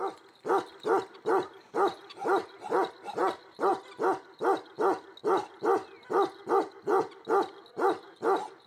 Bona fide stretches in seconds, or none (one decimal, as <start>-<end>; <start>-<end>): 0.0-8.7